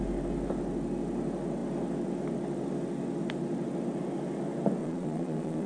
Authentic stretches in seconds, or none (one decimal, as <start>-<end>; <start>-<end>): 0.0-4.8